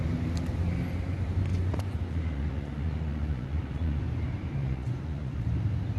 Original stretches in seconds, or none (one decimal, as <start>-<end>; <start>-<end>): 0.0-1.5; 4.0-4.6; 5.4-6.0